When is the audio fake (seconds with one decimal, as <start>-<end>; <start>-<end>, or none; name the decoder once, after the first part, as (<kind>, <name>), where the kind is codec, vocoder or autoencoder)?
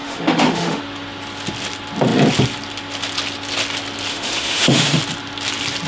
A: 0.0-0.8 (autoencoder, DAC-VAE); 4.1-5.0